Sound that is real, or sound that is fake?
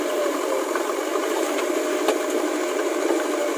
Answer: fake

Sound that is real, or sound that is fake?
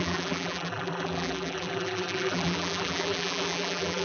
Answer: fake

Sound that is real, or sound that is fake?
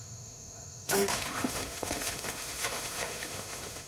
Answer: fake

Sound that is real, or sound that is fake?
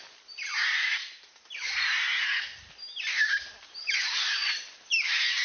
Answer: real